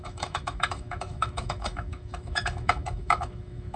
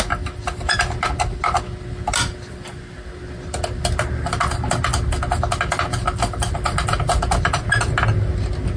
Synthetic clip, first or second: first